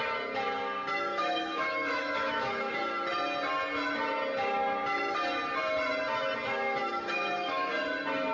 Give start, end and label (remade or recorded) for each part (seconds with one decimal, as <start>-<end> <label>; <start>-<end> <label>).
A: 0.0-1.1 recorded; 1.1-2.7 remade; 2.7-6.8 recorded; 6.8-7.7 remade; 7.7-8.3 recorded